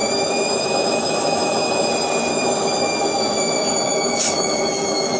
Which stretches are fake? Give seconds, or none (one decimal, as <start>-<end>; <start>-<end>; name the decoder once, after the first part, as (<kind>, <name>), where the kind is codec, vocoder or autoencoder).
0.0-1.9 (autoencoder, DAC-VAE); 2.3-5.2